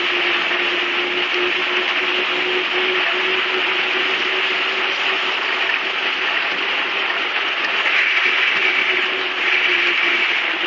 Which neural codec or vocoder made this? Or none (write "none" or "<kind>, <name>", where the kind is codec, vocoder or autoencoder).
none